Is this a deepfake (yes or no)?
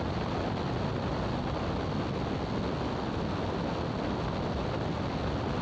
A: no